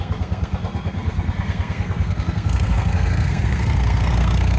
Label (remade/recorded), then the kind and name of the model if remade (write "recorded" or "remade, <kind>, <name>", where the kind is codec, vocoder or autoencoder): remade, codec, SNAC